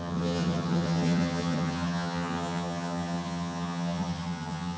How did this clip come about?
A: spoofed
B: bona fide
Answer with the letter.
A